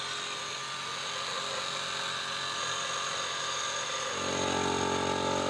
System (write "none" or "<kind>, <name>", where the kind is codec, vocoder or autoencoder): none